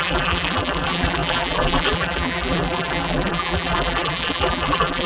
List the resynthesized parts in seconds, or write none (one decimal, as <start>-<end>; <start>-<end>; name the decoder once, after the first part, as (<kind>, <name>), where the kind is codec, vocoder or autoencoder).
0.0-5.1 (vocoder, BigVGAN v2)